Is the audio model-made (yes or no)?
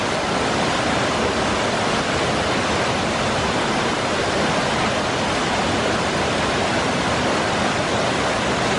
yes